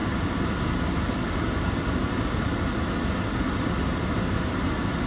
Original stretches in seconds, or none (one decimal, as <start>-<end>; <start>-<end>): 0.0-5.1